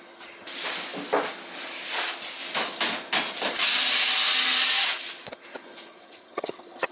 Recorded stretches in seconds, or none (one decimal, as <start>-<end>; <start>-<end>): 0.0-5.9